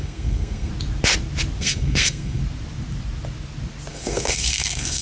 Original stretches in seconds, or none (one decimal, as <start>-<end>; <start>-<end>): 0.7-1.6; 2.4-3.9